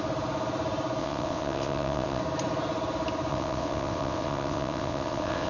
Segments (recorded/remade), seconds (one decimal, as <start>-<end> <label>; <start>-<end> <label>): 0.0-1.0 recorded; 1.0-2.2 remade; 2.2-3.3 recorded; 3.3-5.5 remade